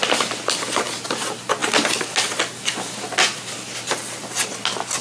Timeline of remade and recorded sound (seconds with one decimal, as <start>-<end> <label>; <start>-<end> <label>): 0.0-5.0 recorded